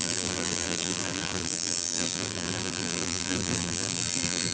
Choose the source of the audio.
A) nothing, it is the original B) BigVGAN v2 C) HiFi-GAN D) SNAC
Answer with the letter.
B